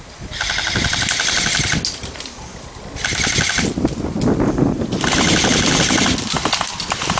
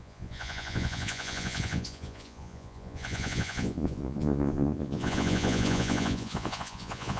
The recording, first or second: first